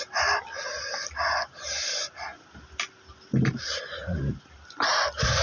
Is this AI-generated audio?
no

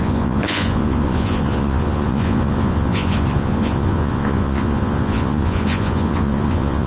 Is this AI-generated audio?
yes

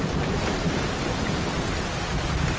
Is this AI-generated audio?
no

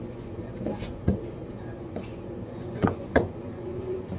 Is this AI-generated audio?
yes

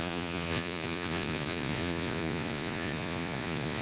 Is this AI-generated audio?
yes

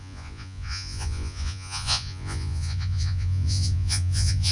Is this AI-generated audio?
yes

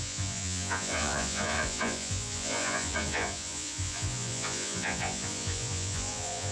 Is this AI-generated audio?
yes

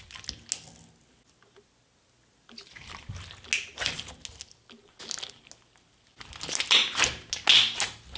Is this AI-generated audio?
no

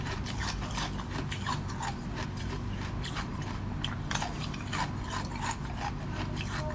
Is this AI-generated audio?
no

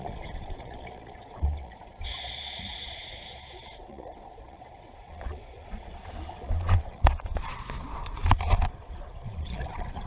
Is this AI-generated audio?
yes